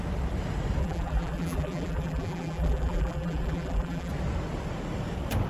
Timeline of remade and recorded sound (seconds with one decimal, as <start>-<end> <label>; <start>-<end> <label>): 0.0-0.8 recorded; 0.8-4.1 remade; 4.1-5.5 recorded